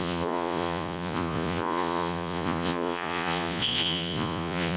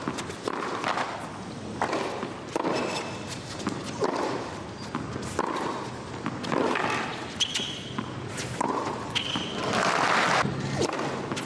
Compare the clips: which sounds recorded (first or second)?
second